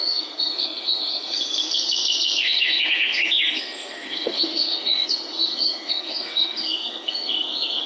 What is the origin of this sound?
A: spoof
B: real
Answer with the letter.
A